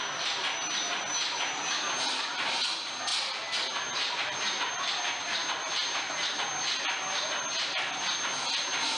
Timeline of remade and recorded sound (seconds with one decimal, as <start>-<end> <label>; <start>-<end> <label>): 0.0-9.0 recorded

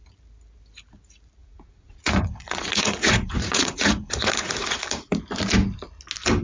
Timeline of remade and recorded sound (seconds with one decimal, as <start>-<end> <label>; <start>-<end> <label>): 0.0-1.4 recorded; 1.4-5.2 remade; 5.2-6.4 recorded

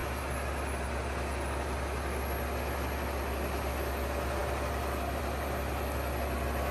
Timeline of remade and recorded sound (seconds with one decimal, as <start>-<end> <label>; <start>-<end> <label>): 0.0-6.7 recorded

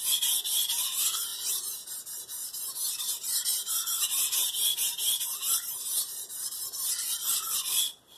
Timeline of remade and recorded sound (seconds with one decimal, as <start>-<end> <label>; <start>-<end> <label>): 0.0-2.4 recorded; 2.4-3.7 remade; 3.7-4.7 recorded; 4.7-5.2 remade; 5.2-8.2 recorded

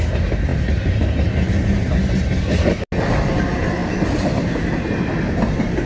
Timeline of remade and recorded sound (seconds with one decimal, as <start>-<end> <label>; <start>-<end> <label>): 0.0-5.9 recorded

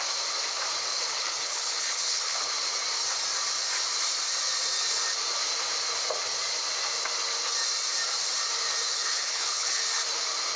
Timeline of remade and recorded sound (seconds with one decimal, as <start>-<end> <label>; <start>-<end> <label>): 0.0-0.9 recorded; 0.9-2.5 remade; 2.5-8.9 recorded; 8.9-9.8 remade; 9.8-10.6 recorded